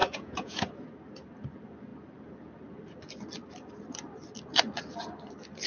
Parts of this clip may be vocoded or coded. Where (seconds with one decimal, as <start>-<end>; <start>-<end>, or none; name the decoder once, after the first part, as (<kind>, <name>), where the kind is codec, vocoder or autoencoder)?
0.0-0.7 (vocoder, Vocos)